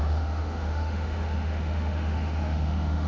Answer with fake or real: fake